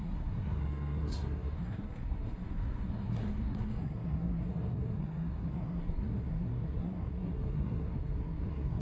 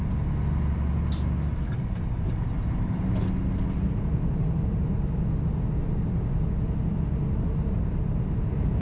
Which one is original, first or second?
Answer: second